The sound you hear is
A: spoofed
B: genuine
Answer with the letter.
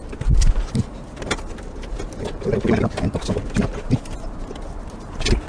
B